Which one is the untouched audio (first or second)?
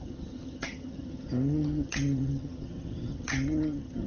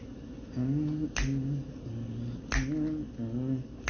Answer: second